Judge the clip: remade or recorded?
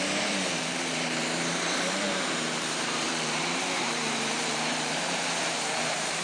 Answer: remade